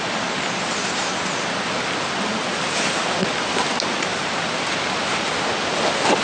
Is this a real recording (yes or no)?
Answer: yes